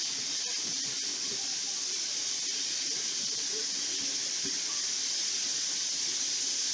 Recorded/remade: recorded